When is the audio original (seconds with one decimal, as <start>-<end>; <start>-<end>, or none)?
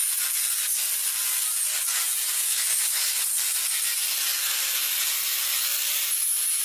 0.0-2.5; 3.1-6.6